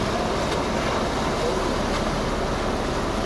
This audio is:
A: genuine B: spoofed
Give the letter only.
A